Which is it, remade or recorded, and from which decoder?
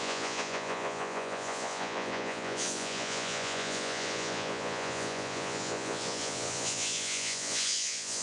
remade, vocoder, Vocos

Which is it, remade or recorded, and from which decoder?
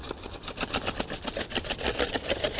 recorded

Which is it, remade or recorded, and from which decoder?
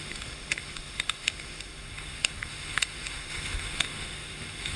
remade, autoencoder, DAC-VAE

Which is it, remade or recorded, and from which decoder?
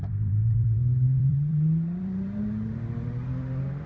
remade, vocoder, BigVGAN v2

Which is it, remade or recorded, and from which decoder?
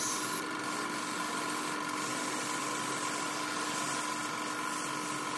recorded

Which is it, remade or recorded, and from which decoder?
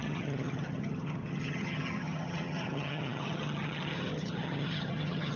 remade, vocoder, HiFi-GAN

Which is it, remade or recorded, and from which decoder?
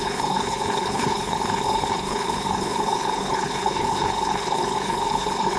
remade, codec, HILCodec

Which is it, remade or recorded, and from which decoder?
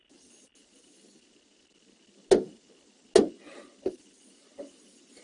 recorded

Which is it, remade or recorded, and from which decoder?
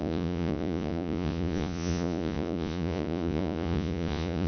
remade, vocoder, Vocos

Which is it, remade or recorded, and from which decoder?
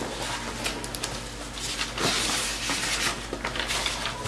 recorded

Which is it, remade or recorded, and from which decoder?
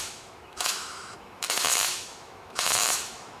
remade, autoencoder, DAC-VAE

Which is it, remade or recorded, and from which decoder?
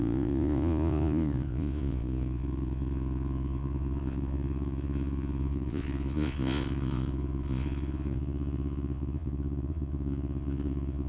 remade, vocoder, Vocos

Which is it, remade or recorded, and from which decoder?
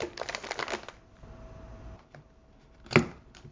recorded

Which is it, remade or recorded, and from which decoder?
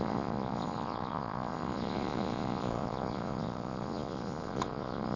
remade, vocoder, Vocos